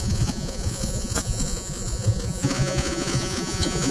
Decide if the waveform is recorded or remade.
remade